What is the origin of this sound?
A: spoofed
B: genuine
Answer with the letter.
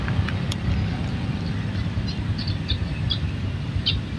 B